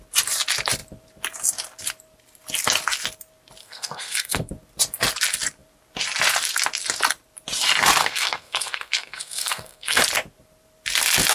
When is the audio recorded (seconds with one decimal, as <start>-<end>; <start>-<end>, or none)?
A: 0.0-3.6; 4.5-8.0; 10.0-11.3